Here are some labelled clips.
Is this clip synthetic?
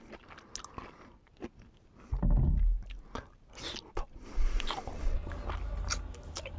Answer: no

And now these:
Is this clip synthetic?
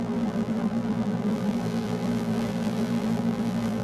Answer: yes